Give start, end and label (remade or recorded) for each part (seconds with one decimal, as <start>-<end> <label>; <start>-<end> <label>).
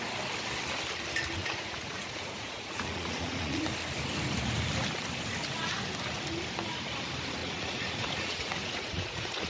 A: 0.0-1.4 recorded; 1.4-3.6 remade; 3.6-7.4 recorded; 7.4-9.5 remade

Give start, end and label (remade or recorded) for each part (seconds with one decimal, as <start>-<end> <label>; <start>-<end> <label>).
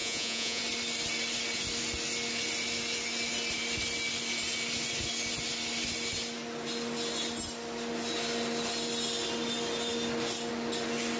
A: 0.0-0.6 remade; 0.6-11.2 recorded